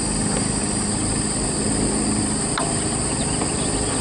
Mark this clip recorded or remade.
recorded